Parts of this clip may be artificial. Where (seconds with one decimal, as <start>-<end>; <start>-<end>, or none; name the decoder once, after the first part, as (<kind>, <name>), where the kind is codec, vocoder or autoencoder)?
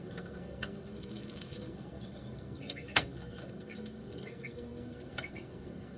0.0-6.0 (codec, SNAC)